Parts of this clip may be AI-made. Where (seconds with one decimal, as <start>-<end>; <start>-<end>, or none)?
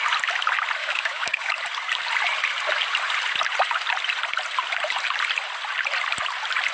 0.8-1.5